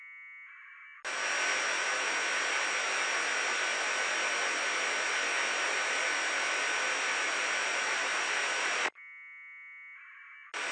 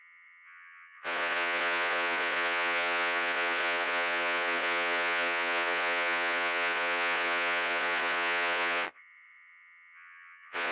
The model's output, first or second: second